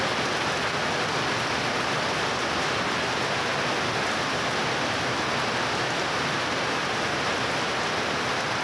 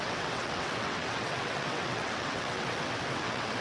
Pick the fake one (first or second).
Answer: second